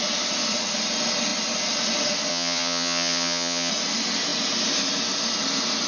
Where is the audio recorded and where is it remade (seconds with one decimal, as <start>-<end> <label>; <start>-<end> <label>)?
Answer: 0.0-2.3 recorded; 2.3-3.7 remade; 3.7-5.9 recorded

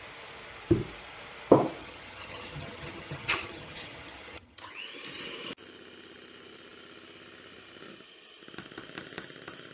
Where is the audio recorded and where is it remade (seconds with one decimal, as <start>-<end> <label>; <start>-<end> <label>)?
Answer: 0.0-1.8 recorded; 1.8-4.7 remade; 4.7-9.7 recorded

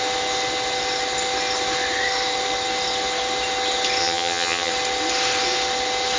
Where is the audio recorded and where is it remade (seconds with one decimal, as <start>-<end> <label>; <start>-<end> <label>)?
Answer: 0.0-4.0 recorded; 4.0-4.7 remade; 4.7-6.2 recorded